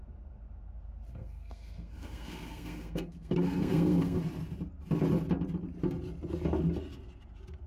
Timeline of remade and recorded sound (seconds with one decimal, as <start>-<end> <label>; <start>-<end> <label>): 0.0-1.1 recorded; 1.1-4.2 remade; 4.2-7.7 recorded

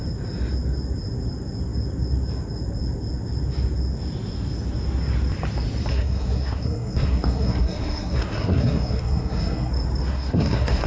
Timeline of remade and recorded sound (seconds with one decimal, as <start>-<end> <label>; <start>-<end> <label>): 0.0-5.9 recorded; 5.9-9.7 remade; 9.7-10.1 recorded; 10.1-10.9 remade

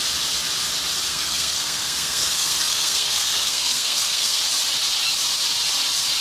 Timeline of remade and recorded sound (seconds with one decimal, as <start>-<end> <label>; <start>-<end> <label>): 0.0-1.1 recorded; 1.1-4.4 remade; 4.4-6.2 recorded

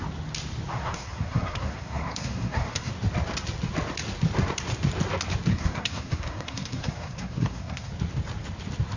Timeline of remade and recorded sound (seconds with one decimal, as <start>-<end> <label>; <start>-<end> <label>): 0.0-0.7 recorded; 0.7-2.9 remade; 2.9-5.5 recorded; 5.5-7.9 remade; 7.9-9.0 recorded

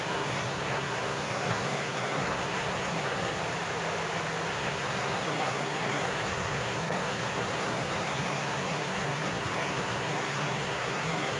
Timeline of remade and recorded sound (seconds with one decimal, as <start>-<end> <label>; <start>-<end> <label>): 0.0-3.4 remade; 3.4-4.5 recorded; 4.5-11.4 remade

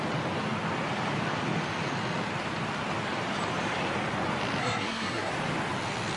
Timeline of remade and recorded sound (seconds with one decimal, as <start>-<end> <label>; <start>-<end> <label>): 0.0-4.6 recorded; 4.6-5.3 remade; 5.3-6.2 recorded

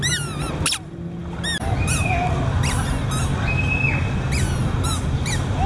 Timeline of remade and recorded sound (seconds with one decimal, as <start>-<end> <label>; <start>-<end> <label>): 0.0-5.7 recorded

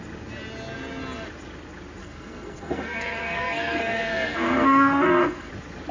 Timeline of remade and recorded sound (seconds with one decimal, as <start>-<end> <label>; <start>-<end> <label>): 0.0-2.0 recorded; 2.0-5.5 remade; 5.5-5.9 recorded